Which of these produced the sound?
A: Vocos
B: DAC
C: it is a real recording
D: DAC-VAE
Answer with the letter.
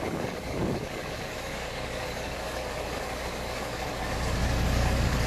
B